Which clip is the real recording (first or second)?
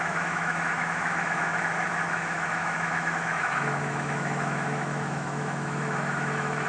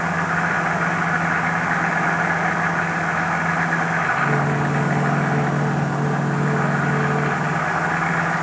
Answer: second